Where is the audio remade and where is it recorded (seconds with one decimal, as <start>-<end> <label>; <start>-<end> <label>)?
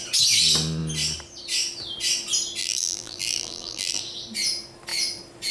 0.0-2.6 recorded; 2.6-4.0 remade; 4.0-5.5 recorded